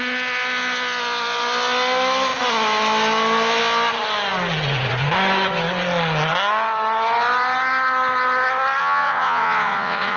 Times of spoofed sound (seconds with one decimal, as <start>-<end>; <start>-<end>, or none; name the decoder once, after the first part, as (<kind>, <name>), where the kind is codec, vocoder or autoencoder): 8.8-10.2 (vocoder, Vocos)

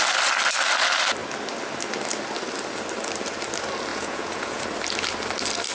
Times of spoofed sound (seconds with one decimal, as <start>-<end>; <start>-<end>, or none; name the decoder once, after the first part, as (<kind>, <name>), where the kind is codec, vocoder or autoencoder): 3.9-4.6 (vocoder, Vocos)

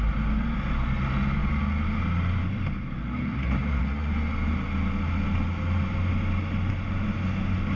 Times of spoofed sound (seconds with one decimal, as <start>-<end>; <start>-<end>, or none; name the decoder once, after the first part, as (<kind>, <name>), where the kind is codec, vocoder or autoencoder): 3.3-4.1 (vocoder, Vocos)

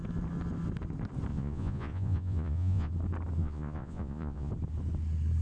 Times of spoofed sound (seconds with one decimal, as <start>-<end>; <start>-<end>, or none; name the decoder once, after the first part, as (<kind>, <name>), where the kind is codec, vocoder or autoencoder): 1.3-2.9 (vocoder, Vocos); 3.4-4.5